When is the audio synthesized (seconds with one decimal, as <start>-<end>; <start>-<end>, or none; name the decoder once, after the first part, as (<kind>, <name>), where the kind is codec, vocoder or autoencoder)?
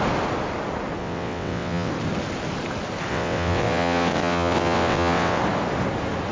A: 1.0-1.9 (vocoder, WaveNeXt); 3.1-5.4